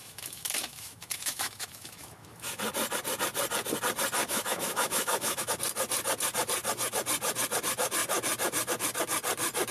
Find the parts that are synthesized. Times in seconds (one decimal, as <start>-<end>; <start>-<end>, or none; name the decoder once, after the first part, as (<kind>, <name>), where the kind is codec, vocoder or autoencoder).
0.0-2.6 (autoencoder, DAC-VAE); 4.2-5.5